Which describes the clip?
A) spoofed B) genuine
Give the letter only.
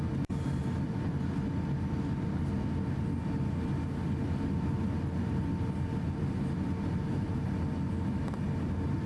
B